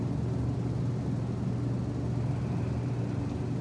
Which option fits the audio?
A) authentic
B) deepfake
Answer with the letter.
A